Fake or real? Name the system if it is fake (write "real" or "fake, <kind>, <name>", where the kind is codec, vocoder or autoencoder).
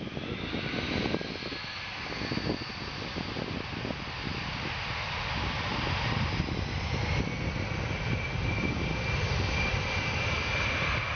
real